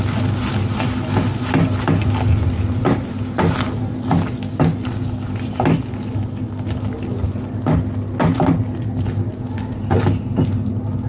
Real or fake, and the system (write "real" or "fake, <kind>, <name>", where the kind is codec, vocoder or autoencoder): real